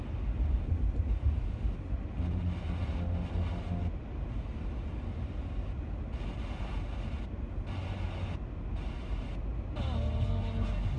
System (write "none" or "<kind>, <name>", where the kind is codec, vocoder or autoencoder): none